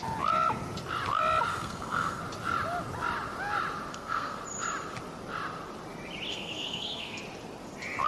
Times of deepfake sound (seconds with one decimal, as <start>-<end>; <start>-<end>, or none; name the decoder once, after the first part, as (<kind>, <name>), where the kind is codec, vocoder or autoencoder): 1.5-2.2 (codec, SNAC); 3.9-4.4; 6.3-7.2